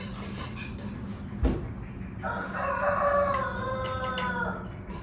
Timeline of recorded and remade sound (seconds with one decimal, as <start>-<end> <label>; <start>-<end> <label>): 0.0-5.0 recorded